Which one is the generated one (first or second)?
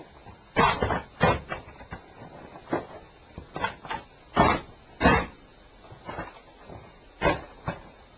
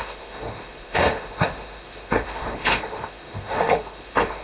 second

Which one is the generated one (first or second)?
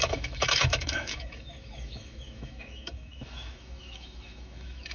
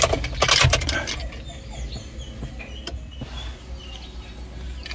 first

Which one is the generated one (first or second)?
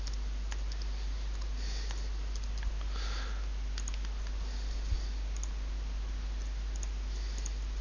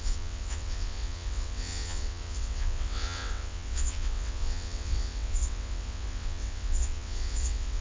second